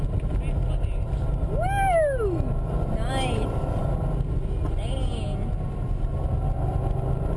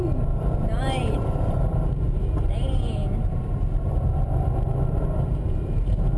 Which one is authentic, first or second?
first